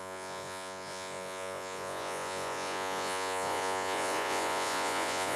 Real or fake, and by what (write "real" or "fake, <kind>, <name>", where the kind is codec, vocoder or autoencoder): fake, vocoder, Vocos